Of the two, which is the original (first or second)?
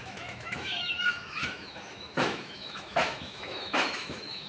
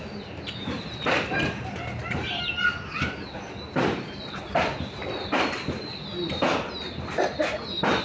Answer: second